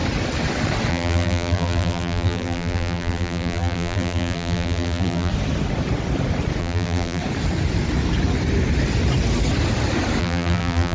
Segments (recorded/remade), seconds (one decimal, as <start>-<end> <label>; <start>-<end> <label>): 0.0-0.9 recorded; 0.9-5.3 remade; 5.3-6.6 recorded; 6.6-7.2 remade; 7.2-10.2 recorded; 10.2-10.9 remade